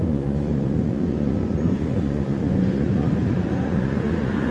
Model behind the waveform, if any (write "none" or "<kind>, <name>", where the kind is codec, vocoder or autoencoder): vocoder, Vocos